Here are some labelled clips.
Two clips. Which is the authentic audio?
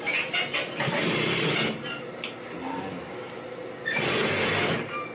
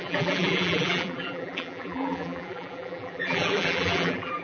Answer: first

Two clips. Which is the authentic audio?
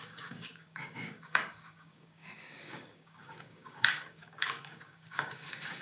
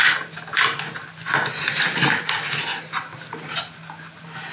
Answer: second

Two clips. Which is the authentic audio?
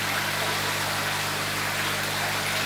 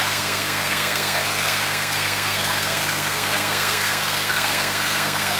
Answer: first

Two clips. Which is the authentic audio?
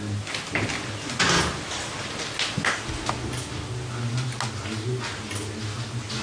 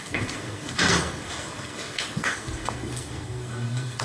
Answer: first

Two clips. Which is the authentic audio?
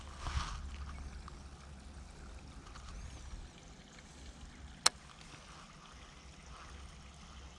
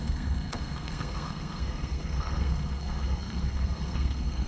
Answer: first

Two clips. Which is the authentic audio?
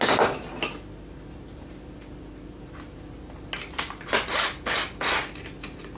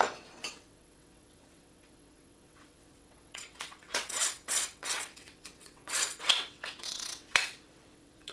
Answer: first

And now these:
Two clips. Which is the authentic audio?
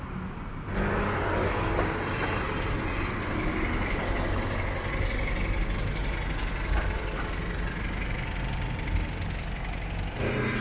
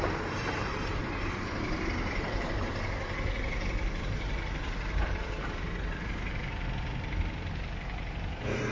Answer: first